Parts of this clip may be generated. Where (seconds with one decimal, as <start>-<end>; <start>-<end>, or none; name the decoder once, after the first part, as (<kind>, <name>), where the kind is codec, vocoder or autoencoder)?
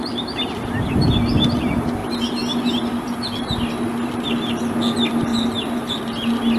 5.3-6.0 (vocoder, BigVGAN v2)